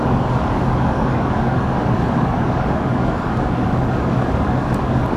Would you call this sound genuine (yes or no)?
no